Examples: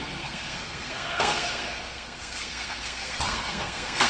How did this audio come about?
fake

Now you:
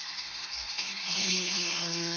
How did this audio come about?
fake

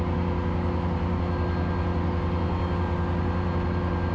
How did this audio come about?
real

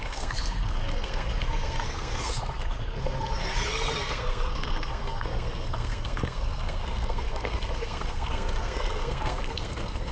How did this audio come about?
fake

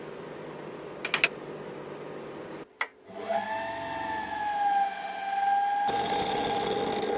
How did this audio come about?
real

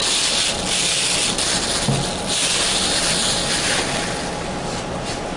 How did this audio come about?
real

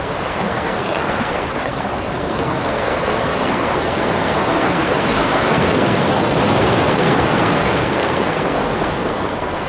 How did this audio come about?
fake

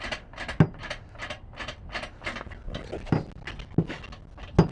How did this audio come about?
real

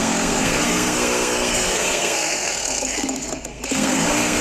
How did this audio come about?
fake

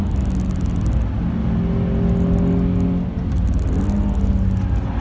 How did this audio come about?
real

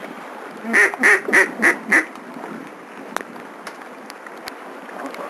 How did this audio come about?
real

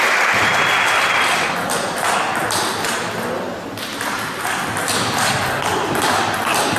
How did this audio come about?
real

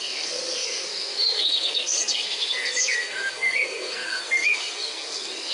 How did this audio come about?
fake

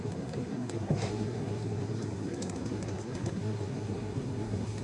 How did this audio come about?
fake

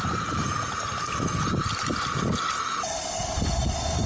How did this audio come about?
real